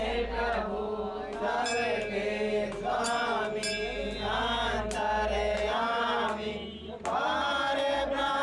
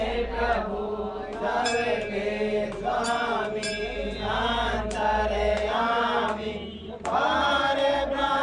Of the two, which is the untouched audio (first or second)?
first